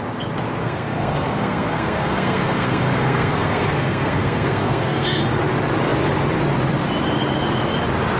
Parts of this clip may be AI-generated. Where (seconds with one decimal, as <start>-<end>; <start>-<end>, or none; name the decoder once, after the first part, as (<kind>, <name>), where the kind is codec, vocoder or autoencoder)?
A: 0.6-5.2 (codec, SNAC)